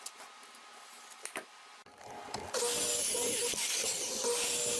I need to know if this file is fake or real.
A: real